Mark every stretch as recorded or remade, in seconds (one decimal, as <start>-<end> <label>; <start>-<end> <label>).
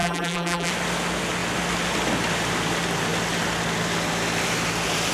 0.0-0.7 remade; 0.7-5.1 recorded